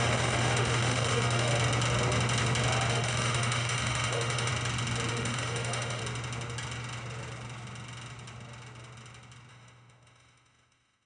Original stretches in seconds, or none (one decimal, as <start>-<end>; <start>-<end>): 1.5-2.9; 4.5-5.1; 6.0-9.5